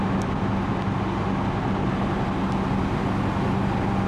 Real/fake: real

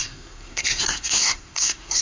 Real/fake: fake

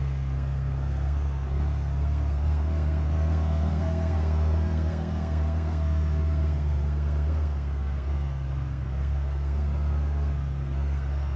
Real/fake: fake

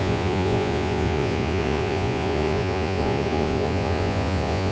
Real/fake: fake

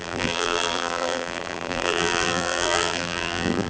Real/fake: fake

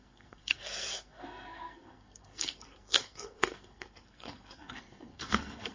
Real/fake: fake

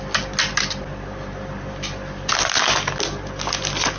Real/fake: real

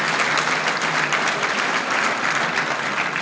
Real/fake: real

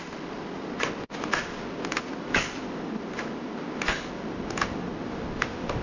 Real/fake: real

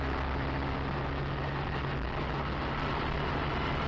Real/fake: real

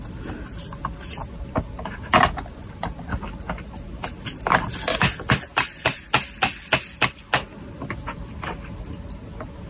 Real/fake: real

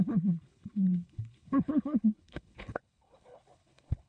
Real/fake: fake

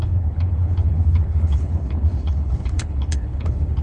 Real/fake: fake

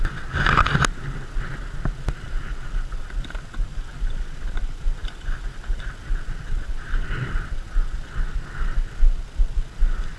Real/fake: real